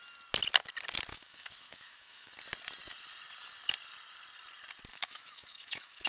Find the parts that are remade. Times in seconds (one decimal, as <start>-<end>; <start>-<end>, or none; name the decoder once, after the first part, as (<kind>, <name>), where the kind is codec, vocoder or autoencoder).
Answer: 1.1-2.3 (autoencoder, DAC-VAE); 4.9-6.1